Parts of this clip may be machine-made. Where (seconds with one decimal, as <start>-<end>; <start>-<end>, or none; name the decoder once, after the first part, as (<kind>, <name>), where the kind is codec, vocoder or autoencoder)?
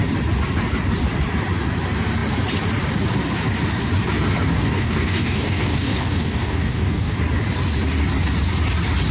4.6-7.1 (codec, DAC)